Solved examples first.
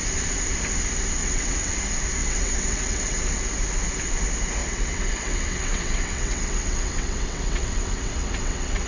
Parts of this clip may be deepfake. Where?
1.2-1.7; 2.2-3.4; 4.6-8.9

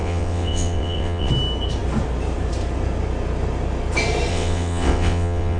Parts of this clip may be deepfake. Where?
0.0-1.3; 4.3-5.6

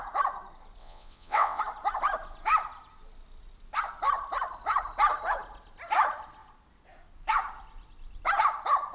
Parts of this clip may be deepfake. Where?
0.8-1.6

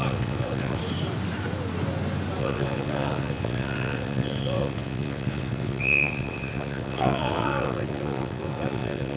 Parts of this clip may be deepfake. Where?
0.0-0.8; 2.4-9.2

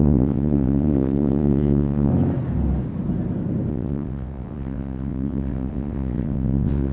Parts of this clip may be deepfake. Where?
0.0-2.1; 3.7-6.9

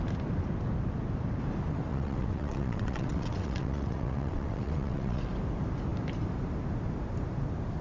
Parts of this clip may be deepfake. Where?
1.9-5.2

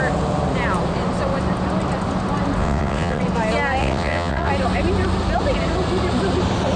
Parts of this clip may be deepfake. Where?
2.6-3.2; 3.8-4.5

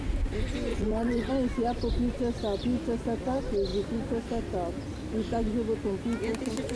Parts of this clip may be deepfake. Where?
0.7-1.3